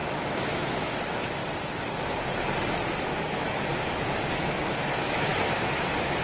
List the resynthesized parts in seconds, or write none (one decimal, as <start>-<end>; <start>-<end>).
0.0-1.4; 3.0-3.7; 4.4-6.2